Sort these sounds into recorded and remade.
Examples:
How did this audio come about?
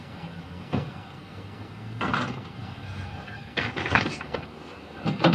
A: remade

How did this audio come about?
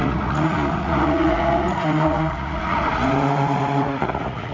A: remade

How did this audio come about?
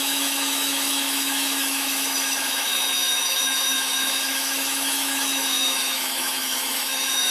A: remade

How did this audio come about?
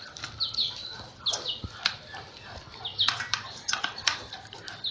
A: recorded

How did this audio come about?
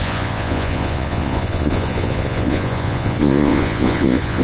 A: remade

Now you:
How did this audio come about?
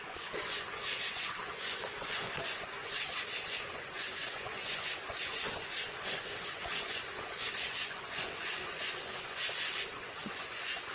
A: remade